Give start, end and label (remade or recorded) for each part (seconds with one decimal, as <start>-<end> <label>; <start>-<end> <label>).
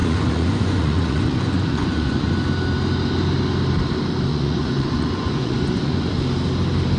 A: 0.0-2.3 remade; 2.3-4.3 recorded; 4.3-6.1 remade; 6.1-7.0 recorded